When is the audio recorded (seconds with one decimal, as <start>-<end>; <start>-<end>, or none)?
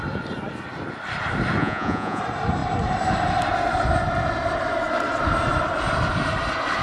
0.0-1.6; 2.2-6.8